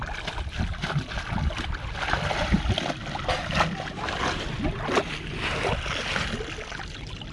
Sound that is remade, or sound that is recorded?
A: recorded